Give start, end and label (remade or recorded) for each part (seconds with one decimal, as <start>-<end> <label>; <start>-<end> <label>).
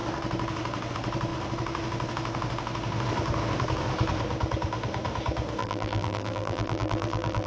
0.0-5.6 recorded; 5.6-7.5 remade